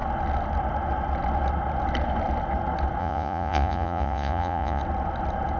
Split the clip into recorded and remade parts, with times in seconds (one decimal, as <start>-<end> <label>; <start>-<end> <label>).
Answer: 0.0-3.0 recorded; 3.0-4.8 remade; 4.8-5.6 recorded